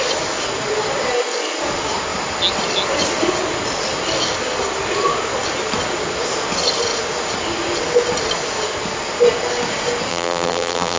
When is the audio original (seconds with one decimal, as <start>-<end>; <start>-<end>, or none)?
0.0-10.1